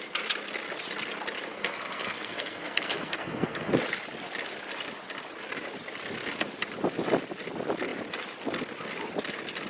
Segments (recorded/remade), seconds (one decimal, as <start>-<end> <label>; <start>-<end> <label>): 0.0-1.5 recorded; 1.5-3.7 remade; 3.7-9.7 recorded

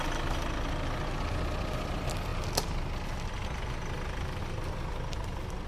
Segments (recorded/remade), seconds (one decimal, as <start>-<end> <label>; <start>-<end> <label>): 0.0-5.7 recorded

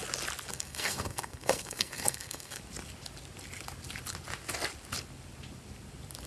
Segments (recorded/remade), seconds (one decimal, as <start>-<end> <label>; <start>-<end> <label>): 0.0-0.5 recorded; 0.5-2.6 remade; 2.6-6.3 recorded

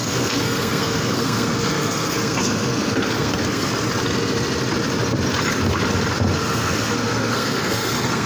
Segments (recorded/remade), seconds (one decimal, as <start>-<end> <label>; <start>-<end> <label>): 0.0-3.7 remade; 3.7-6.4 recorded; 6.4-8.3 remade

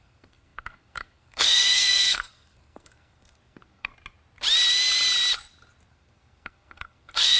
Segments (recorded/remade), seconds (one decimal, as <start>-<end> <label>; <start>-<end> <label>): 0.0-3.9 remade; 3.9-5.9 recorded; 5.9-7.4 remade

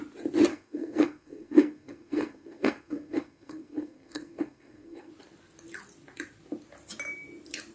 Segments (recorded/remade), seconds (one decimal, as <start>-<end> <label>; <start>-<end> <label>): 0.0-0.5 recorded; 0.5-5.1 remade; 5.1-7.7 recorded

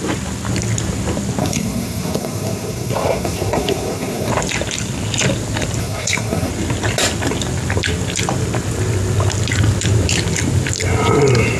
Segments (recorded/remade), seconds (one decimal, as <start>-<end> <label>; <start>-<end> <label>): 0.0-1.4 recorded; 1.4-4.3 remade; 4.3-5.8 recorded; 5.8-6.5 remade; 6.5-11.6 recorded